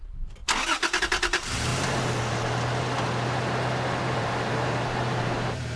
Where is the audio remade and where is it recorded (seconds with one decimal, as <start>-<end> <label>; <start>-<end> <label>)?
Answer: 0.0-0.4 remade; 0.4-1.0 recorded; 1.0-1.7 remade; 1.7-4.2 recorded; 4.2-5.8 remade